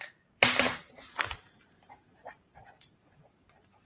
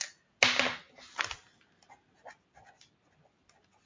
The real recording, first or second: second